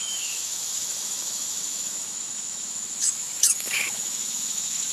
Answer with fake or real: fake